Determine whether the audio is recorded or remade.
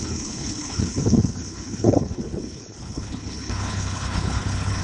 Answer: remade